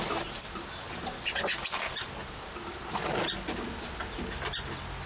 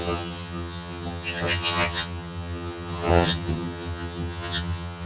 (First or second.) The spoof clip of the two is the second